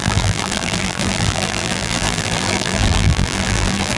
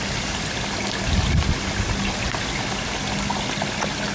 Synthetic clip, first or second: first